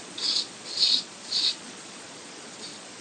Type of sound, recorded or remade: remade